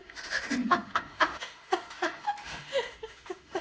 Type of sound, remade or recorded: remade